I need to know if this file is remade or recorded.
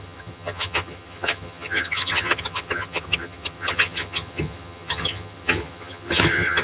remade